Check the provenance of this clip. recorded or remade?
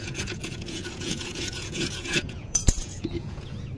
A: remade